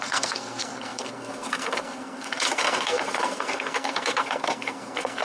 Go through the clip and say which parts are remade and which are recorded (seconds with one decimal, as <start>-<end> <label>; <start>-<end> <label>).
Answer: 0.0-5.2 remade